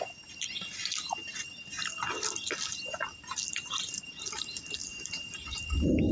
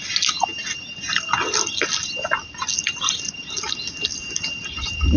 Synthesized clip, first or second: first